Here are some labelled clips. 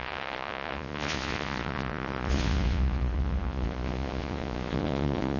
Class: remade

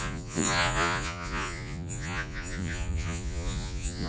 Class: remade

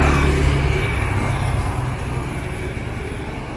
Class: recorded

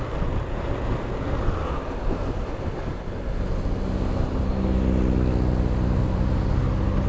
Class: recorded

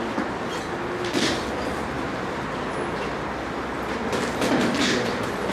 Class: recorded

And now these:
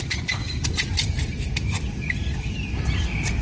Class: recorded